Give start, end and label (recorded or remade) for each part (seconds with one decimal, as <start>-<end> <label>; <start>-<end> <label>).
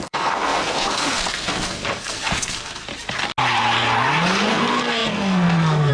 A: 0.0-2.9 remade; 2.9-4.5 recorded; 4.5-5.9 remade